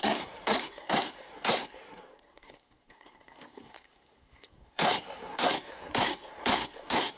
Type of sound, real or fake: fake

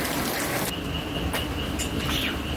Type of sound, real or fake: real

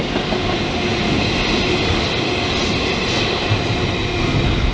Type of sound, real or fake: real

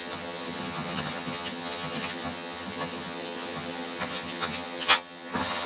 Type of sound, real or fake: fake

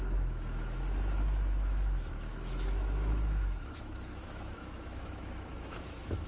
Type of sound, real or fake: fake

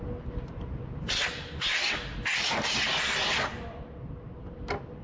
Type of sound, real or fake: real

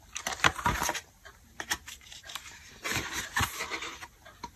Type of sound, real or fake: fake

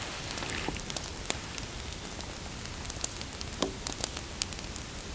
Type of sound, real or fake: real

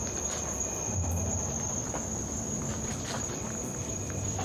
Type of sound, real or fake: fake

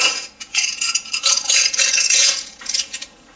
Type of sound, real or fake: fake